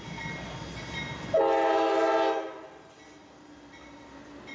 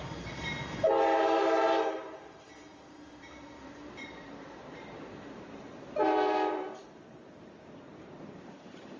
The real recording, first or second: first